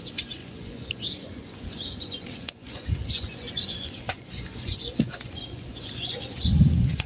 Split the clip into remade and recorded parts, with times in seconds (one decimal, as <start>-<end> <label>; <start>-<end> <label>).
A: 0.0-7.1 remade